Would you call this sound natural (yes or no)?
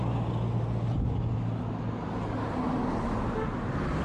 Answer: yes